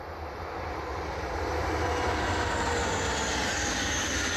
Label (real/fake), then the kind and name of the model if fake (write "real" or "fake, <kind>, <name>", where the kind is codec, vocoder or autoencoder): real